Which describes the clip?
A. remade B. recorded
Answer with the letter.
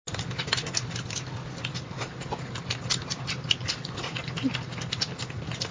B